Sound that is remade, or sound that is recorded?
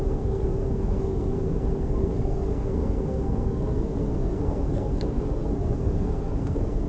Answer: remade